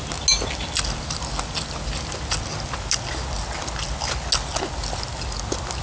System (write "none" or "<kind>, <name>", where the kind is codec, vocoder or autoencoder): none